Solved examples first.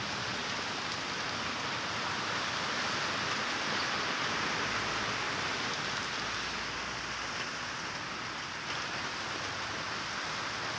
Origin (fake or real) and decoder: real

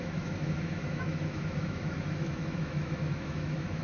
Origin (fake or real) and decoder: fake, autoencoder, DAC-VAE